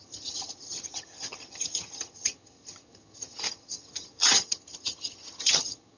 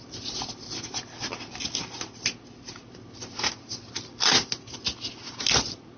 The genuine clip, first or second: second